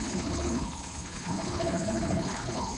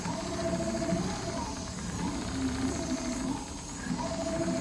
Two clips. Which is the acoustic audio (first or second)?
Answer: second